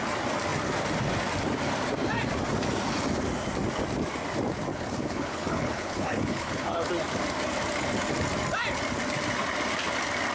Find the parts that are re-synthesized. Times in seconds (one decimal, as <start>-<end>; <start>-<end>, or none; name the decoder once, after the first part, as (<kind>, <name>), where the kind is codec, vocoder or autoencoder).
4.7-6.9 (codec, HILCodec)

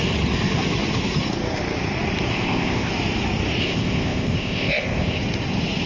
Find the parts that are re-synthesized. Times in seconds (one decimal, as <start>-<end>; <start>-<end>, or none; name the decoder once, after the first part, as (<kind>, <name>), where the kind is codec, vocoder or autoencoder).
2.3-2.9 (codec, ZipCodec); 3.6-5.2

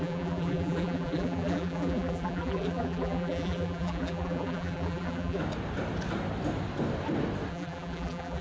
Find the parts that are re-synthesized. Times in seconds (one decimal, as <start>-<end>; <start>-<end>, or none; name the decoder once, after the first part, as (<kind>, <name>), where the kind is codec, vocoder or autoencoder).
0.0-5.4 (vocoder, BigVGAN v2); 7.5-8.4

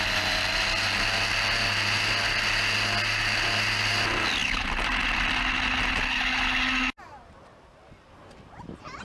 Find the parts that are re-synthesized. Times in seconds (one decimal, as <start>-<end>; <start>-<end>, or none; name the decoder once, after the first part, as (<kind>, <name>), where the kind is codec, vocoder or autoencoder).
none

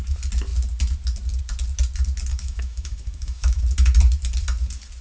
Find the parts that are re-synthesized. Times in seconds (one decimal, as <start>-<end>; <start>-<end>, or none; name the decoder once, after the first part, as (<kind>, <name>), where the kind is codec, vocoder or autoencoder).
2.3-3.6 (autoencoder, DAC-VAE)

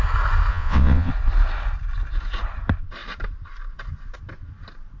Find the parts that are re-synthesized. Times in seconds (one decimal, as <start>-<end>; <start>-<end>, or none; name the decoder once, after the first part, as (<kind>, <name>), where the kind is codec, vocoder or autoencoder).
0.5-1.1 (vocoder, WaveNeXt)

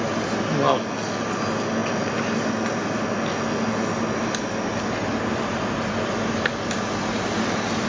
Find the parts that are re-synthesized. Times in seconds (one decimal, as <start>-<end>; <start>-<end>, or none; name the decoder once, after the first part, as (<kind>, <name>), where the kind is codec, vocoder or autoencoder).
none

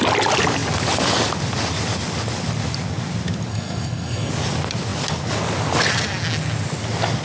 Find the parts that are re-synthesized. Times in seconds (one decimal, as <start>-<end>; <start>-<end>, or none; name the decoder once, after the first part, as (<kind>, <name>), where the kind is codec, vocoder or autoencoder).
3.5-4.3 (codec, SNAC)